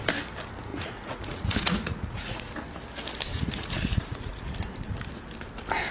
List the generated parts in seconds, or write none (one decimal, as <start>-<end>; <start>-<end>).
0.7-2.5; 3.3-4.5